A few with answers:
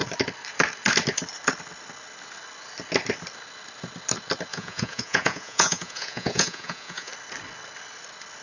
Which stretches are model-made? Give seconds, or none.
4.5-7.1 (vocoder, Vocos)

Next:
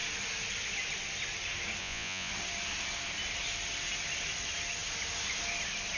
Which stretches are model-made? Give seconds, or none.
1.8-2.3 (vocoder, Vocos)

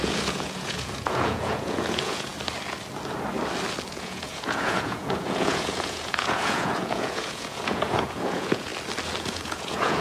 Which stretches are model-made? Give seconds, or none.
0.0-2.3 (vocoder, Vocos); 3.9-8.7; 9.2-10.0

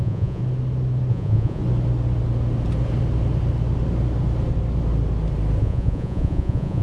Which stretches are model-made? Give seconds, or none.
0.0-0.4 (vocoder, Vocos); 1.1-1.6; 5.6-6.8

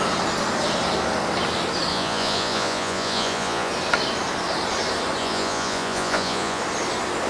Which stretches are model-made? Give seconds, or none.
1.9-3.7 (vocoder, Vocos); 5.2-6.6

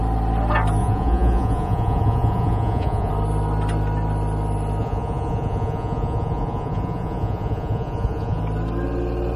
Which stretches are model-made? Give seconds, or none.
0.8-3.1 (vocoder, Vocos); 4.8-8.4